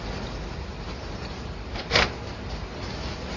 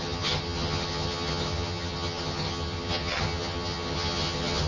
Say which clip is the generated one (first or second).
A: second